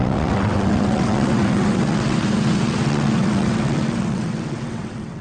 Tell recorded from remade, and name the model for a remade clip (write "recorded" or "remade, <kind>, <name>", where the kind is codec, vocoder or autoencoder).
remade, vocoder, WaveNeXt